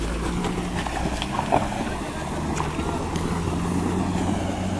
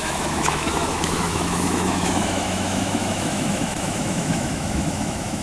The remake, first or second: second